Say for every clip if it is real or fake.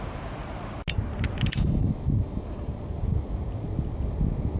real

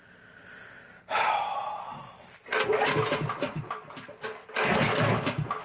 real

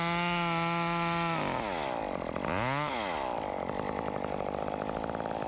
real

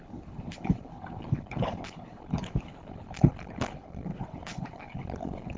fake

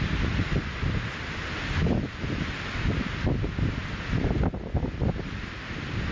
real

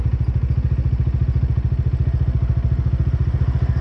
real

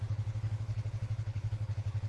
fake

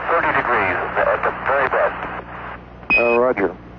real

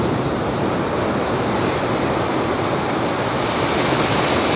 real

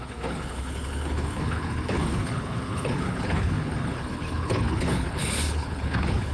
fake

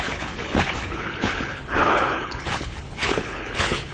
fake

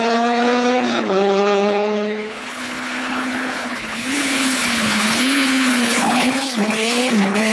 fake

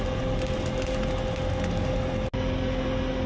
real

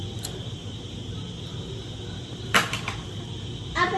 real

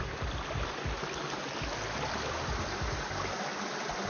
real